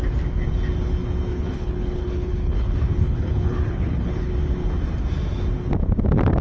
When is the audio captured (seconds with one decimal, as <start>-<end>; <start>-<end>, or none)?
0.0-1.3; 4.3-6.4